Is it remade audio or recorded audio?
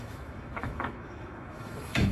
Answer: remade